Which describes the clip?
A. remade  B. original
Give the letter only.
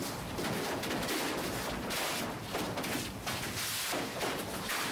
B